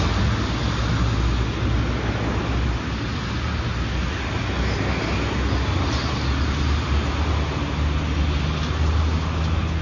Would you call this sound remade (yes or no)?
no